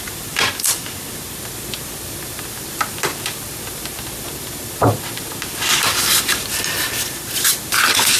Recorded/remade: remade